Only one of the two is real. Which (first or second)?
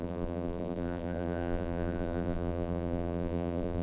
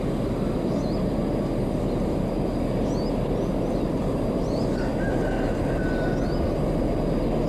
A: second